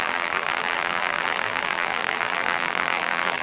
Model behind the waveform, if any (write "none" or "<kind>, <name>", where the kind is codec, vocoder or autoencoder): vocoder, BigVGAN v2